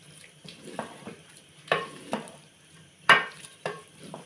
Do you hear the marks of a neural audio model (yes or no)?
yes